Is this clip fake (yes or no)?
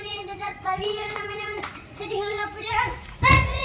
yes